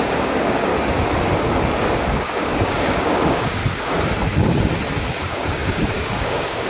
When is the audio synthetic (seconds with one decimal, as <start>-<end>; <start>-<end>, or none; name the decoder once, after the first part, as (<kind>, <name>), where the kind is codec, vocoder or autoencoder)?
0.0-0.7 (codec, DAC); 1.9-3.6; 5.1-6.7